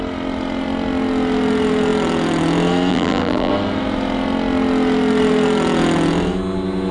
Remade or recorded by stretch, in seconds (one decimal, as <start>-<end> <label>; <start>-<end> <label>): 0.0-2.9 recorded; 2.9-3.5 remade; 3.5-6.9 recorded